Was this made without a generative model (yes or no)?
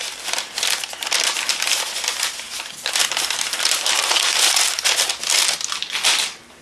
yes